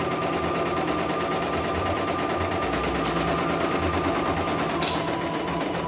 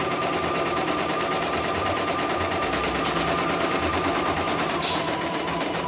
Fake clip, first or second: second